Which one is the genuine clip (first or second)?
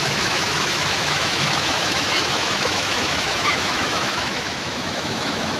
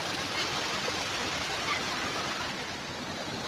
second